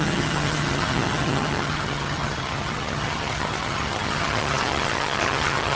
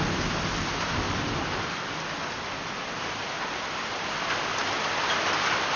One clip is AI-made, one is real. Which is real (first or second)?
second